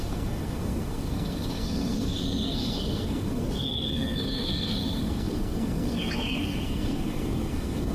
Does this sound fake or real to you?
fake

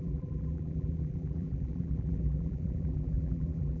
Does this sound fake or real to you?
fake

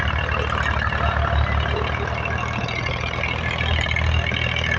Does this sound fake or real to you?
real